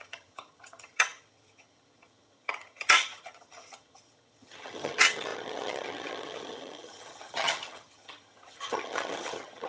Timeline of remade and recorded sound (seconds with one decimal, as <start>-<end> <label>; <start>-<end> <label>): 0.0-9.7 remade